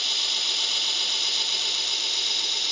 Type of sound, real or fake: real